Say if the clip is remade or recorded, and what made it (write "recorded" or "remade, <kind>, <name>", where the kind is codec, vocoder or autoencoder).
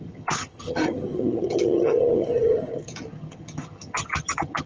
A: remade, vocoder, HiFi-GAN